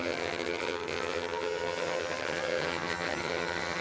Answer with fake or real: fake